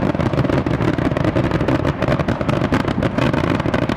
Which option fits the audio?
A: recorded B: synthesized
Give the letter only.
A